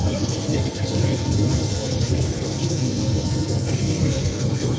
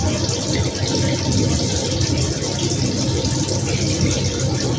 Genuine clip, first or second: second